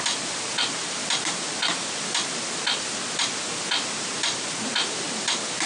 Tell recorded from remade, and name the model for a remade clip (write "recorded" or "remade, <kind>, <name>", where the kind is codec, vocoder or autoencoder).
recorded